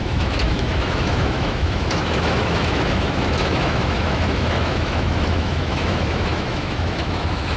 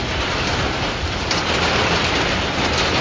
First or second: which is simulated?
first